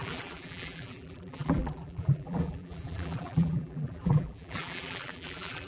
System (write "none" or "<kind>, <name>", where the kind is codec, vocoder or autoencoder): vocoder, BigVGAN v2